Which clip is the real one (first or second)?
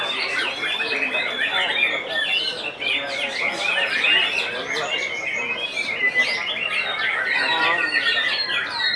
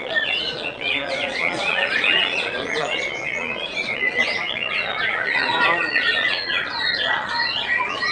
first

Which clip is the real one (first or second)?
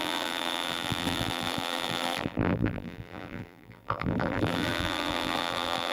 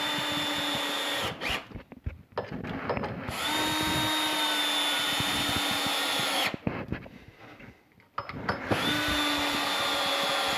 second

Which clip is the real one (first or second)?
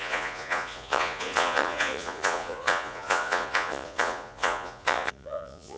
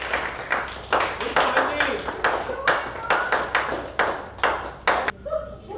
second